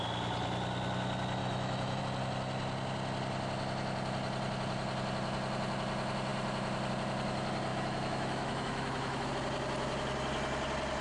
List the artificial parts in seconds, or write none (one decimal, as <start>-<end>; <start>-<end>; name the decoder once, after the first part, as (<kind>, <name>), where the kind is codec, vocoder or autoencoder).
1.4-2.0 (autoencoder, DAC-VAE); 7.7-9.3